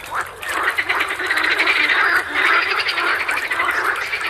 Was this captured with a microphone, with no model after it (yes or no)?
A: yes